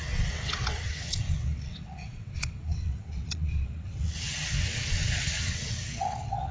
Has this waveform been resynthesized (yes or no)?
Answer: yes